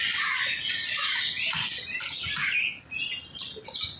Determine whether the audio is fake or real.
real